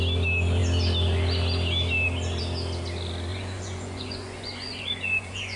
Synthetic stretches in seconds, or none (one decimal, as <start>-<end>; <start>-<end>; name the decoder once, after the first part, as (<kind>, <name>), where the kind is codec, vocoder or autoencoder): 3.3-5.6 (vocoder, Vocos)